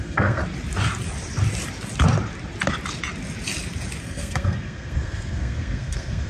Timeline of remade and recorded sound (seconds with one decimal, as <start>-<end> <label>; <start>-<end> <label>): 0.0-0.4 remade; 0.4-4.0 recorded; 4.0-6.3 remade

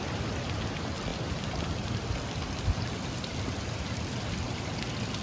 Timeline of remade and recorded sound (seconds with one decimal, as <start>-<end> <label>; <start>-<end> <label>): 0.0-5.2 recorded

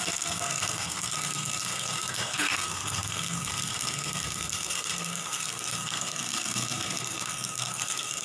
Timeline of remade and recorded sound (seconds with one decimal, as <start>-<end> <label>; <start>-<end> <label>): 0.0-8.2 remade

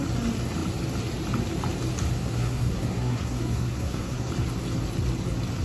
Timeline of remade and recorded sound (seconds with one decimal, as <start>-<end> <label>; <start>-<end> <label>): 0.0-2.2 recorded; 2.2-4.3 remade; 4.3-5.6 recorded

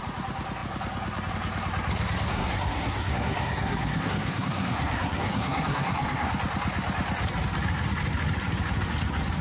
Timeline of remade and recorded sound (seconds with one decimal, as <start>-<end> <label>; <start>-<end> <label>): 0.0-2.3 recorded; 2.3-6.3 remade; 6.3-9.4 recorded

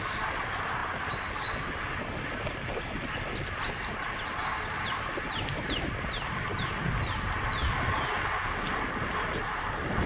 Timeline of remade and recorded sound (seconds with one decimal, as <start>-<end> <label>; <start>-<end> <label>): 0.0-10.1 recorded

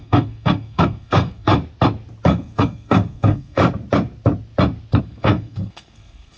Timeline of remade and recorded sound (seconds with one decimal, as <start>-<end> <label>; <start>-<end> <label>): 0.0-1.5 remade; 1.5-2.3 recorded; 2.3-3.6 remade; 3.6-5.0 recorded; 5.0-6.4 remade

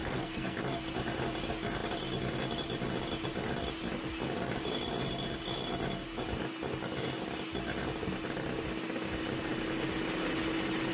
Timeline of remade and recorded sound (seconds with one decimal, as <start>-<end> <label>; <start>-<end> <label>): 0.0-0.6 remade; 0.6-10.9 recorded